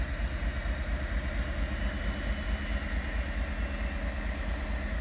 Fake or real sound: real